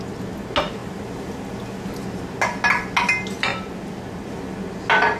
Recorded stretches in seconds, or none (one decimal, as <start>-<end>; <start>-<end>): 0.0-3.5; 4.3-5.2